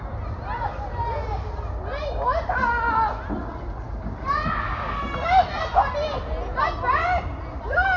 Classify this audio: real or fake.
real